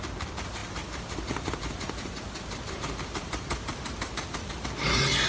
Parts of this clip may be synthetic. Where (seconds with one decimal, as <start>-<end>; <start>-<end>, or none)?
none